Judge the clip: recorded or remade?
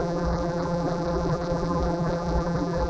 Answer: remade